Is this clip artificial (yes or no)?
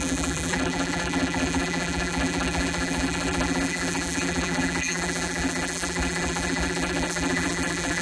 yes